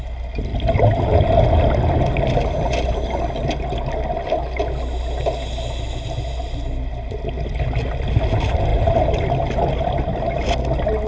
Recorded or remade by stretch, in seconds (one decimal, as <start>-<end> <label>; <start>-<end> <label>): 0.0-11.1 recorded

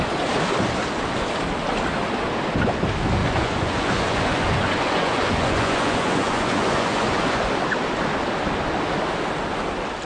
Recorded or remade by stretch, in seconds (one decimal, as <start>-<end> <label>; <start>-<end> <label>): 0.0-3.2 recorded; 3.2-7.5 remade; 7.5-10.1 recorded

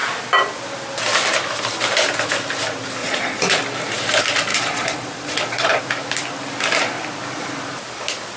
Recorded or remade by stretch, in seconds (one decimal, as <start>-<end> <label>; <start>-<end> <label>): 0.0-3.0 recorded; 3.0-3.6 remade; 3.6-4.5 recorded; 4.5-5.8 remade; 5.8-8.4 recorded

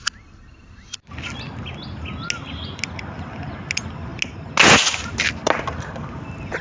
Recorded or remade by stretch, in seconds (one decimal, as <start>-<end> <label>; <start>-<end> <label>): 0.0-6.6 recorded